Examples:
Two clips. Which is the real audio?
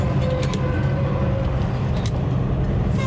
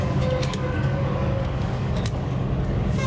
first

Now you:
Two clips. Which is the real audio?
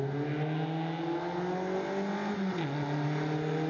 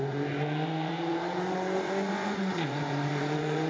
first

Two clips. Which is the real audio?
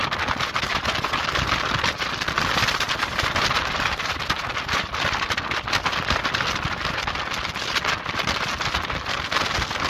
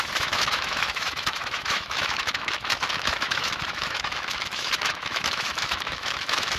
first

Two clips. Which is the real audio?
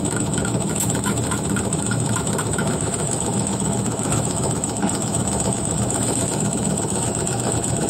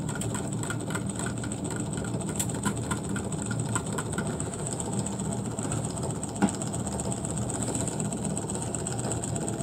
second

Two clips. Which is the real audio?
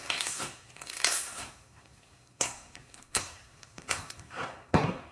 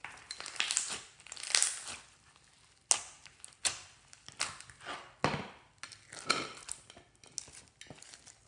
second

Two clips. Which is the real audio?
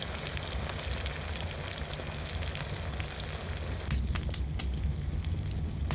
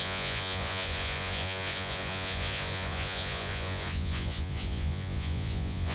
first